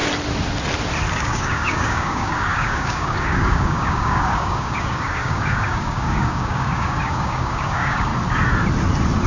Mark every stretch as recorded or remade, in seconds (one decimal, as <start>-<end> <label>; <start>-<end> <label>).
0.0-1.1 recorded; 1.1-8.1 remade; 8.1-9.3 recorded